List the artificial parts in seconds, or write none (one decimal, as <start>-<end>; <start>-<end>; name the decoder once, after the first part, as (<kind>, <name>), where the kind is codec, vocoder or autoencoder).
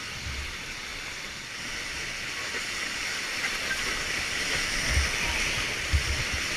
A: none